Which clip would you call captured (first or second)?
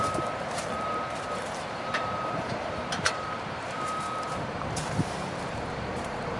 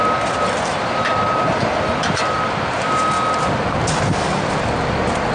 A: second